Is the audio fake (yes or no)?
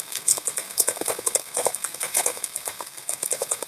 yes